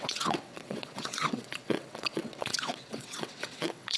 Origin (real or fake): fake